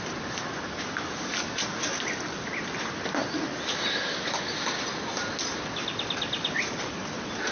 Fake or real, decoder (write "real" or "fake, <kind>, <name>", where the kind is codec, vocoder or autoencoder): real